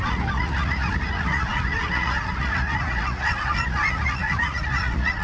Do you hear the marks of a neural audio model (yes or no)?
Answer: yes